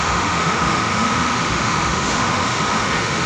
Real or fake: fake